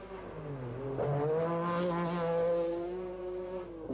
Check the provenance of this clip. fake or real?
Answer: real